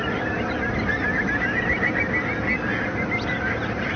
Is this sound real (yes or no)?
yes